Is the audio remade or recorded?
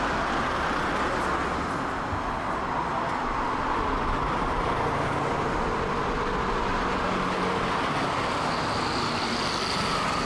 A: recorded